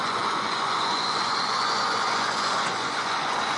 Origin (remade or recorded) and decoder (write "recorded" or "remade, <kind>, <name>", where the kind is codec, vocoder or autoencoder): remade, vocoder, Vocos